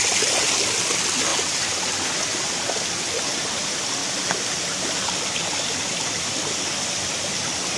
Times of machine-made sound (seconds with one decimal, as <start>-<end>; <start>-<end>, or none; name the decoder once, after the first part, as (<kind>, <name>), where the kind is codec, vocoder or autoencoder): 4.0-5.2 (vocoder, BigVGAN v2)